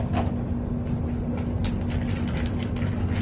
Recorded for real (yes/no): yes